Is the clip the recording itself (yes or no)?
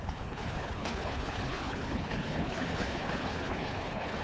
no